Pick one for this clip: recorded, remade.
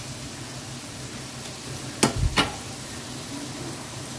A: recorded